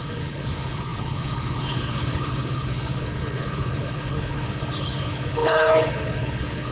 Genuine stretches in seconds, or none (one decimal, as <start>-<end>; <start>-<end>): none